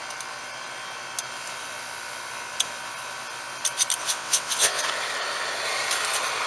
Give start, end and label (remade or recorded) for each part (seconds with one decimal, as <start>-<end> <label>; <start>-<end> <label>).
0.0-4.0 recorded; 4.0-4.8 remade; 4.8-6.5 recorded